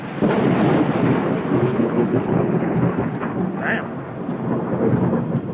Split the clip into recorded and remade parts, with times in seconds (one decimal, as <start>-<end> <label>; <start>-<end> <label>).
0.0-1.7 recorded; 1.7-3.1 remade; 3.1-5.5 recorded